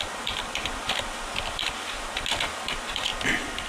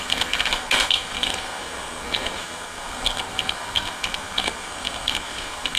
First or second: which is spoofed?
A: second